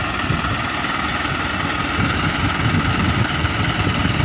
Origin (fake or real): fake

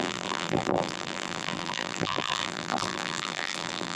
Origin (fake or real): fake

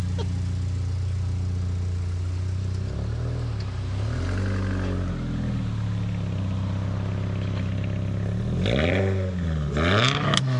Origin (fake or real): real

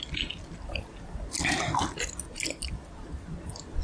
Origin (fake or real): real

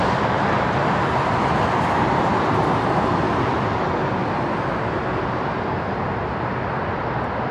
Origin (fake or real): real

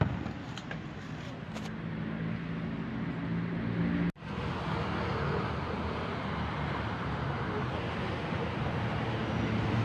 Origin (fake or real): real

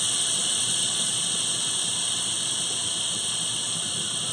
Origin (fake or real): fake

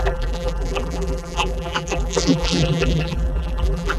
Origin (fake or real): fake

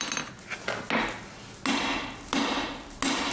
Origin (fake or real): real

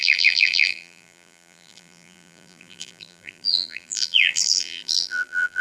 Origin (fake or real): fake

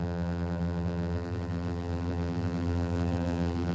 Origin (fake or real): fake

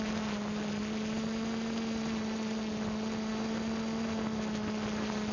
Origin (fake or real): real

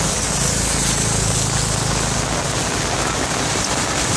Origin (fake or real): real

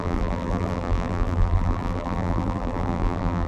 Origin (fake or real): fake